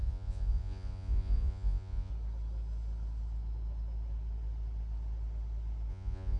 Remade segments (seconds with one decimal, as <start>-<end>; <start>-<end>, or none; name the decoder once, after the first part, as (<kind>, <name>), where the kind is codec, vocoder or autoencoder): 0.0-2.1 (vocoder, Vocos); 5.9-6.4